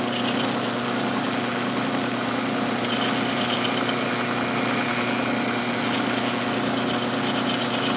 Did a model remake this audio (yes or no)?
no